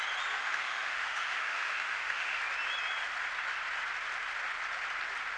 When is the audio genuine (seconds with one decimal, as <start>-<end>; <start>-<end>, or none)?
0.0-0.4; 2.4-5.4